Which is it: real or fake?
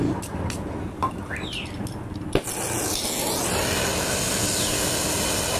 real